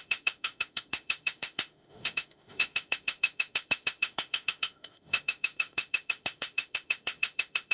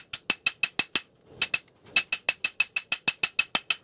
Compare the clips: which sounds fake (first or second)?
first